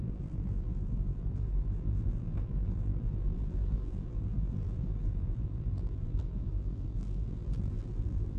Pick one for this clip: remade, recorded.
remade